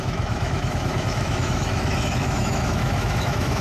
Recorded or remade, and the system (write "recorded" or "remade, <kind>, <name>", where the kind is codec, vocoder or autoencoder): remade, autoencoder, DAC-VAE